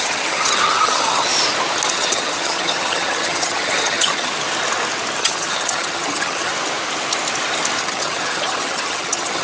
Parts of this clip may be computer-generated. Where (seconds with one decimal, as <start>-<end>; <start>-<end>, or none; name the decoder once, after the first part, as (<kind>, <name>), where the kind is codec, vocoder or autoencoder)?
0.0-1.3 (vocoder, HiFi-GAN); 1.9-4.3; 5.2-6.5; 7.8-9.4